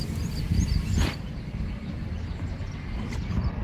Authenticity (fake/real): real